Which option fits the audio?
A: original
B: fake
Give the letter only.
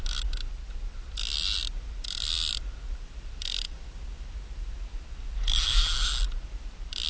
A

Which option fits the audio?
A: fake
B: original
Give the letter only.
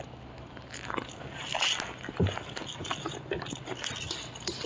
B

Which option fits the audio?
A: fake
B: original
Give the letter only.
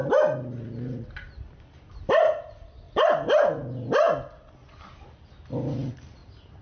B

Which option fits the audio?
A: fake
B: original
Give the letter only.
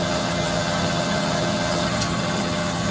A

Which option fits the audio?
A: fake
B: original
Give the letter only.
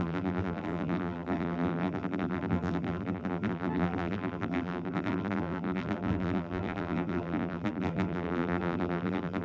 A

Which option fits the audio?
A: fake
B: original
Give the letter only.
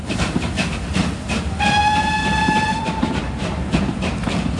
A